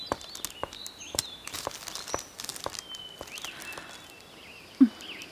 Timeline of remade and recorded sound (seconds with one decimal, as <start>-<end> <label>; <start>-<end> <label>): 0.0-0.6 recorded; 0.6-1.7 remade; 1.7-5.3 recorded